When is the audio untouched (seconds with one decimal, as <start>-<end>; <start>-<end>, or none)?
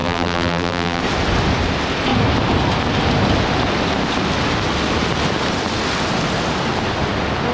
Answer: 1.0-7.5